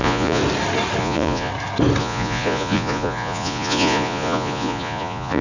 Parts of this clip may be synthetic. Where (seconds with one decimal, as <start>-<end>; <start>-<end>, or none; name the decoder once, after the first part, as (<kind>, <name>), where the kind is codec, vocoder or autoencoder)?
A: 0.0-0.4 (vocoder, Vocos); 1.0-1.5; 2.0-5.4